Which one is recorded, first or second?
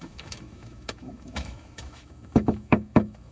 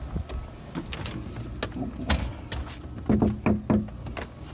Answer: second